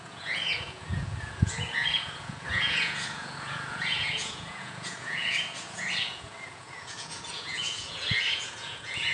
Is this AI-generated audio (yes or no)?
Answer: yes